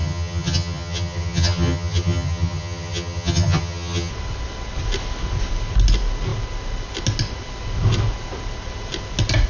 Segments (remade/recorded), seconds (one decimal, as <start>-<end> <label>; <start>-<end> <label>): 0.0-4.1 remade; 4.1-9.5 recorded